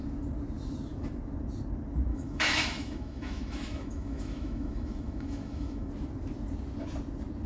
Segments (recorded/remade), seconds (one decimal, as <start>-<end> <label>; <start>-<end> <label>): 0.0-2.1 recorded; 2.1-5.9 remade; 5.9-7.5 recorded